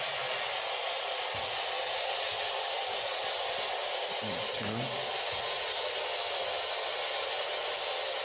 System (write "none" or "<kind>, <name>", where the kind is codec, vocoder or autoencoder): none